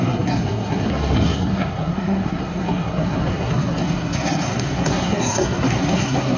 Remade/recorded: remade